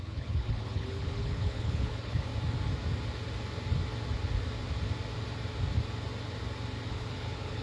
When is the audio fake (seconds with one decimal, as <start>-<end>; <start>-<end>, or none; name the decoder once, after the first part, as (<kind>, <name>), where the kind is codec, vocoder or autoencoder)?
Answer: 0.0-2.3 (codec, HILCodec); 6.9-7.6